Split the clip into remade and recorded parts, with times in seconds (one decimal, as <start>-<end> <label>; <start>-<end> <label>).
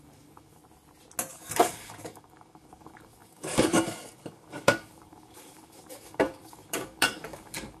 0.0-0.6 remade; 0.6-1.3 recorded; 1.3-7.8 remade